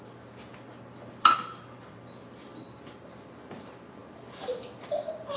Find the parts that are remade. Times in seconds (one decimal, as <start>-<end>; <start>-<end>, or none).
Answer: none